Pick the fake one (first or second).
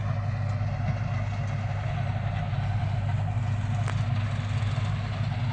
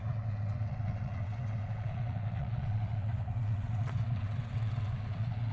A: second